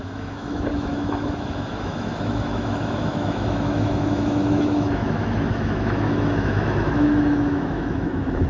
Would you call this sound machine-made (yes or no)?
yes